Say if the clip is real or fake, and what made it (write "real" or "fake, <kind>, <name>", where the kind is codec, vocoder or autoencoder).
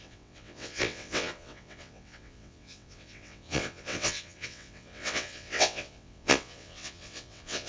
fake, vocoder, WaveNeXt